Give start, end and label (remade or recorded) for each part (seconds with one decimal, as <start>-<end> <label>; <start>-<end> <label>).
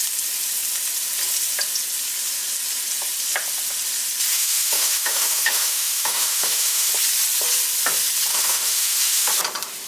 0.0-4.3 recorded; 4.3-6.9 remade; 6.9-8.3 recorded; 8.3-9.3 remade; 9.3-9.9 recorded